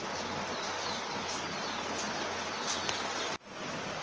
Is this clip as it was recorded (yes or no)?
yes